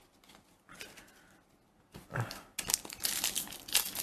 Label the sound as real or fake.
real